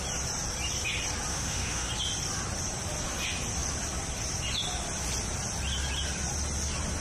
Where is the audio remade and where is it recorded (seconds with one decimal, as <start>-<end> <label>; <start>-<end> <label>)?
0.0-1.3 recorded; 1.3-1.9 remade; 1.9-7.0 recorded